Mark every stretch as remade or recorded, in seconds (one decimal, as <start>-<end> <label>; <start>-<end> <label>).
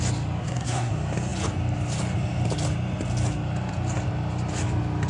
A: 0.0-0.4 recorded; 0.4-0.9 remade; 0.9-5.1 recorded